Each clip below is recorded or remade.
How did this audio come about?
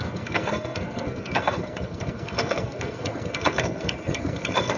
remade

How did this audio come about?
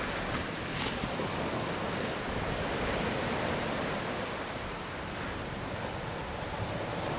recorded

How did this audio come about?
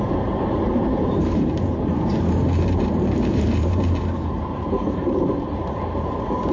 remade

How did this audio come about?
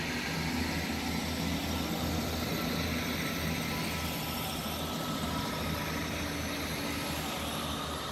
recorded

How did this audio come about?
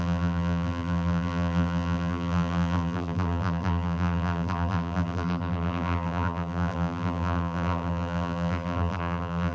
remade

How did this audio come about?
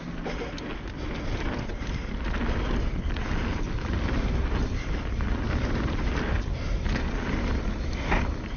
remade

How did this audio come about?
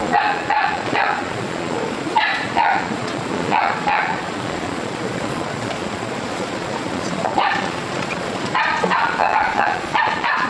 remade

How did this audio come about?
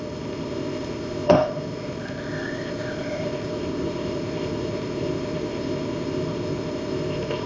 remade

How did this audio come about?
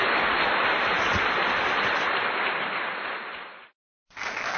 recorded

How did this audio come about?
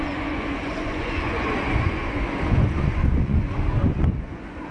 remade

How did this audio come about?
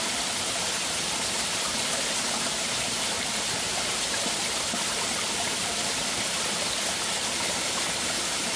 recorded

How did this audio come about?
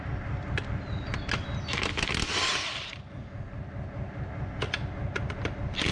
recorded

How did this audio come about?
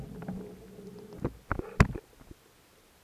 recorded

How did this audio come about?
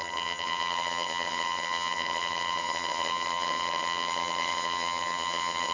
remade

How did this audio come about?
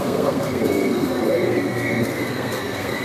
remade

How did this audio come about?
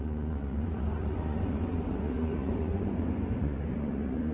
remade